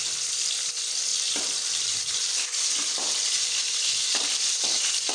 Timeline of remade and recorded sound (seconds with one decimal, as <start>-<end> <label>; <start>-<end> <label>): 0.0-5.1 recorded